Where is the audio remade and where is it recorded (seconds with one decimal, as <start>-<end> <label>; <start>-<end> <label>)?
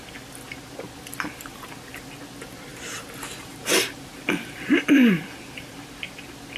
0.0-2.7 recorded; 2.7-5.7 remade; 5.7-6.6 recorded